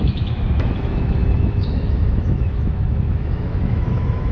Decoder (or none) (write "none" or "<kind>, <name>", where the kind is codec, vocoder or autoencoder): autoencoder, DAC-VAE